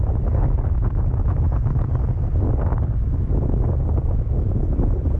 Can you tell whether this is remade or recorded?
recorded